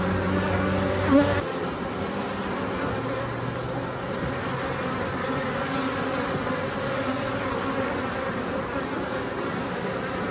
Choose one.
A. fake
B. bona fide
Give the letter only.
B